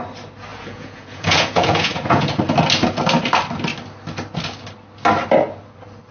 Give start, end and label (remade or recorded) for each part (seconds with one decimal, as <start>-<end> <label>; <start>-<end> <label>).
0.0-0.5 recorded; 0.5-2.4 remade; 2.4-6.1 recorded

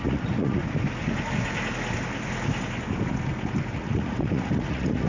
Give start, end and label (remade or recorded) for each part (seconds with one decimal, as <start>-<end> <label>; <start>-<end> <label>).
0.0-0.6 remade; 0.6-3.7 recorded; 3.7-5.1 remade

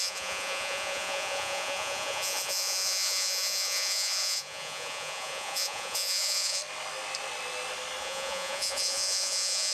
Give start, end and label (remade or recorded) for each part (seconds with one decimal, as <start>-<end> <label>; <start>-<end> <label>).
0.0-6.6 remade; 6.6-8.0 recorded; 8.0-9.7 remade

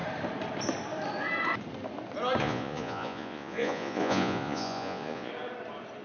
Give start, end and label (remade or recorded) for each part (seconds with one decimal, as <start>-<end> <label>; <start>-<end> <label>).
0.0-2.4 recorded; 2.4-5.3 remade; 5.3-6.0 recorded

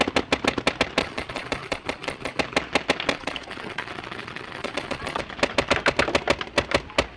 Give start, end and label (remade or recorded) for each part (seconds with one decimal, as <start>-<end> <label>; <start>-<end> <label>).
0.0-1.0 recorded; 1.0-2.4 remade; 2.4-3.1 recorded; 3.1-5.2 remade; 5.2-7.2 recorded

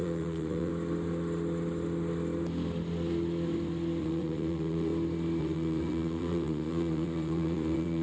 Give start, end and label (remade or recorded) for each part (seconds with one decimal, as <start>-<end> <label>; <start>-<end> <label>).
0.0-0.7 remade; 0.7-4.0 recorded; 4.0-4.9 remade; 4.9-5.4 recorded; 5.4-8.0 remade

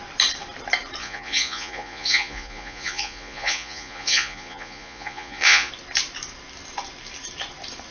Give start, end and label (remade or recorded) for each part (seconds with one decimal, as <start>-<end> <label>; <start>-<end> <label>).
0.0-1.0 recorded; 1.0-5.7 remade; 5.7-7.9 recorded